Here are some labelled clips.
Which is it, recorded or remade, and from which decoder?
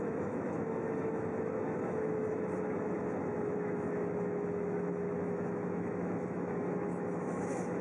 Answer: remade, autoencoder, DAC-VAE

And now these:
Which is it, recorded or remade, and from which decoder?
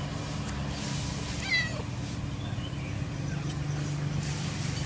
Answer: recorded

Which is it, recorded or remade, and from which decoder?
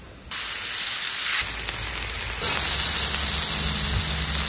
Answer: recorded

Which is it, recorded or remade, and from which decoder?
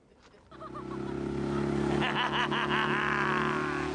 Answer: recorded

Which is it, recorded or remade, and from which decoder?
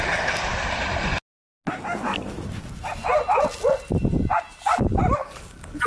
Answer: recorded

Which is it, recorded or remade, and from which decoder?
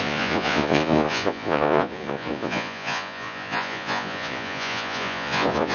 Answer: remade, vocoder, Vocos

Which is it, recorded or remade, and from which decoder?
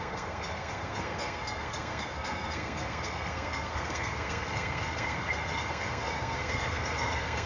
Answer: remade, codec, SNAC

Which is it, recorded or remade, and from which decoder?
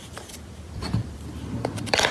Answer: remade, vocoder, BigVGAN v2